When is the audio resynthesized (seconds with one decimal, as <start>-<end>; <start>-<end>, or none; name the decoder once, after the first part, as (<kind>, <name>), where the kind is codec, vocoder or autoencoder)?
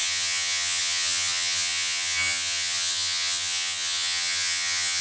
0.0-5.0 (vocoder, HiFi-GAN)